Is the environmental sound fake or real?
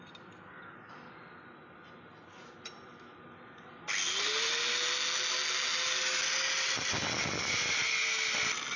real